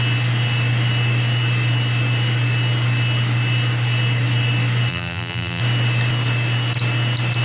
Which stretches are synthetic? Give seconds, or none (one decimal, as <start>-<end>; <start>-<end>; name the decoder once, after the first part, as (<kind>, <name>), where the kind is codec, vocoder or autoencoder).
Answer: 4.9-5.6 (vocoder, BigVGAN v2)